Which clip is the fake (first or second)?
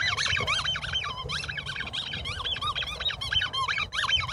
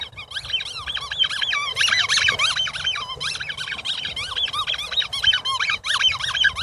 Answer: first